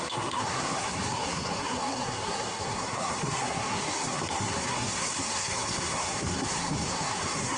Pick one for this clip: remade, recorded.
remade